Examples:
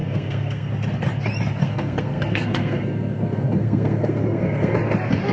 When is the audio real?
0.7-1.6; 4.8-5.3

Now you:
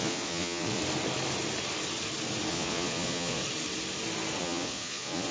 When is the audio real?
0.8-2.5; 3.4-4.4

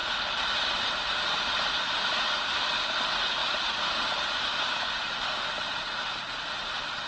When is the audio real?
3.0-3.4; 5.3-7.1